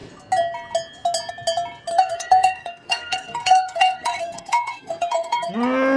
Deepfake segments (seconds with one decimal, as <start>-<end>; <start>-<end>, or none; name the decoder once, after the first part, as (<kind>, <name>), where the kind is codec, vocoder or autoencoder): 1.9-5.5 (codec, SNAC)